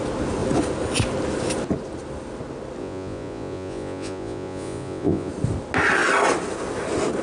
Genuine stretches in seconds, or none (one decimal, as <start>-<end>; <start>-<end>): 0.0-2.8; 5.3-7.2